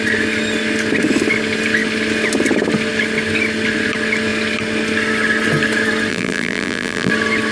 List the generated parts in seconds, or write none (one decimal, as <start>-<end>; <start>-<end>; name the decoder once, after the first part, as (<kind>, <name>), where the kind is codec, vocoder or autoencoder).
6.1-7.1 (vocoder, BigVGAN v2)

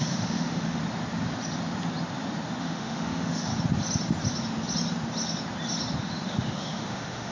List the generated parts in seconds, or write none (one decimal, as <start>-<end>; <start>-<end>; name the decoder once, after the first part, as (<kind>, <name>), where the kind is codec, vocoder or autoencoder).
0.0-0.8 (autoencoder, DAC-VAE); 2.6-3.5; 6.0-7.3

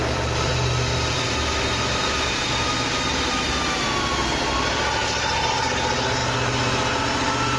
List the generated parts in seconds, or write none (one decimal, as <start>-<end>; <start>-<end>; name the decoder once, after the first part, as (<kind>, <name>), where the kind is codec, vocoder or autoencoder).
0.0-0.5 (vocoder, BigVGAN v2); 4.4-6.2; 7.1-7.6

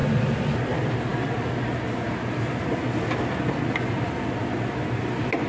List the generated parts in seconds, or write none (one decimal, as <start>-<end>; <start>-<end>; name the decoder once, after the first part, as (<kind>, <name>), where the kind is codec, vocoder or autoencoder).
none

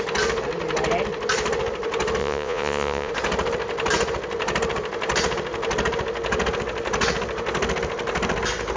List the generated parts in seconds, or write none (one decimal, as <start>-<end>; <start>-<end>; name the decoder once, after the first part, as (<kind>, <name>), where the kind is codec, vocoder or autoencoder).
2.2-3.1 (vocoder, Vocos)